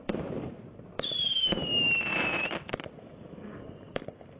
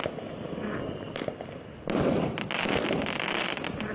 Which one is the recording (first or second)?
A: second